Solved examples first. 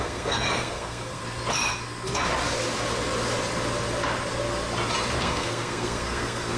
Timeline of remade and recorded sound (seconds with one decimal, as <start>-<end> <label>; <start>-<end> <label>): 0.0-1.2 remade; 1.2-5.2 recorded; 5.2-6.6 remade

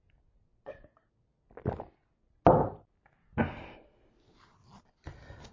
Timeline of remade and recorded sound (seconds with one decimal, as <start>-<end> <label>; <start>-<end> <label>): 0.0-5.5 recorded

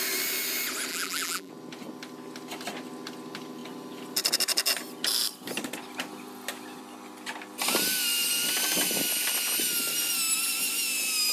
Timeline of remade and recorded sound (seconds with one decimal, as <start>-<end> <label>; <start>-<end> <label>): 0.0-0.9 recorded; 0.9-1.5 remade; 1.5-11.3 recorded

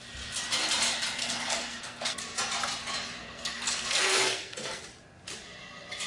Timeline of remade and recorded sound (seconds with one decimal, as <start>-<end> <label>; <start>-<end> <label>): 0.0-1.2 recorded; 1.2-2.2 remade; 2.2-3.2 recorded; 3.2-4.8 remade; 4.8-6.1 recorded